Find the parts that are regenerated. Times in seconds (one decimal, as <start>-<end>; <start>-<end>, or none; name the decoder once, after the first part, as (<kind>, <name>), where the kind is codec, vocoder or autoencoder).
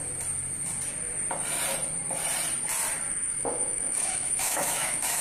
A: 3.1-5.2 (autoencoder, DAC-VAE)